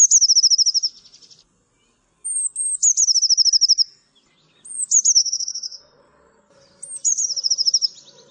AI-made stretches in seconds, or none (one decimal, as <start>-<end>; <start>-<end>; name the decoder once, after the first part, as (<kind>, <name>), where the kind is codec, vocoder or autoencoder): 5.2-5.8 (autoencoder, DAC-VAE)